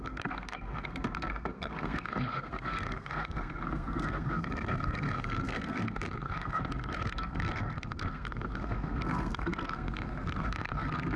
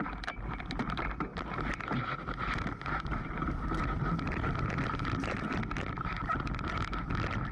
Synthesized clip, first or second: first